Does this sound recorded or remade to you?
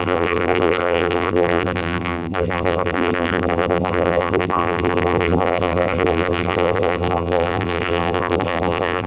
remade